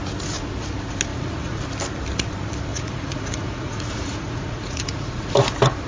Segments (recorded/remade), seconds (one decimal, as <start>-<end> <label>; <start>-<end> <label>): 0.0-1.1 recorded; 1.1-1.6 remade; 1.6-2.7 recorded; 2.7-5.3 remade; 5.3-5.9 recorded